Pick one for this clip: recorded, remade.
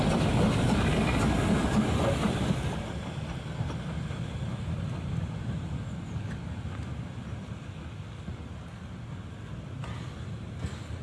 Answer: recorded